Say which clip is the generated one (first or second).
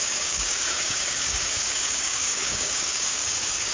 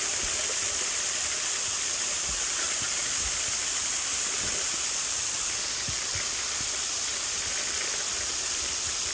first